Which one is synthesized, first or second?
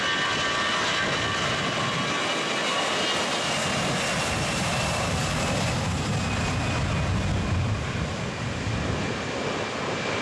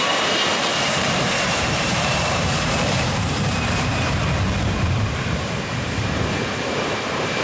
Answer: second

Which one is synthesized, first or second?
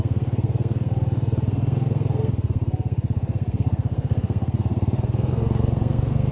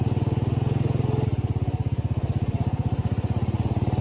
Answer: first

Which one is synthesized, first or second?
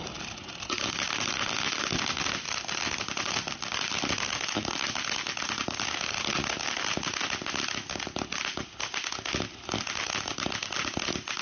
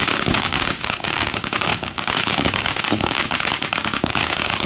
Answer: second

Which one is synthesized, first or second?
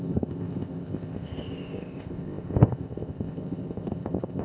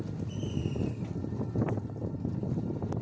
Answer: first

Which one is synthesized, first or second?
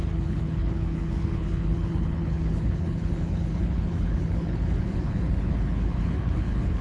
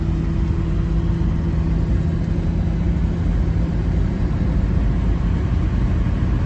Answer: first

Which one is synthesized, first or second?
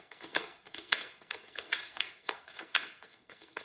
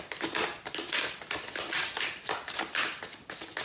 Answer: first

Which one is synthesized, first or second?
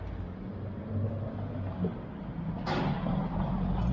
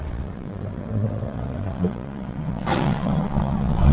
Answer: second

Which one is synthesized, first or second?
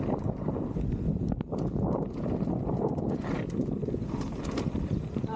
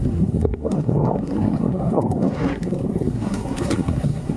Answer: second